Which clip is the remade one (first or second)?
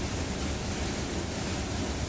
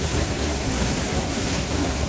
second